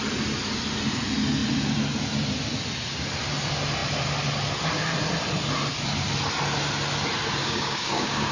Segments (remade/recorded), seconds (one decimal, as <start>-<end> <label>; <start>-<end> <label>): 0.0-7.4 recorded; 7.4-8.3 remade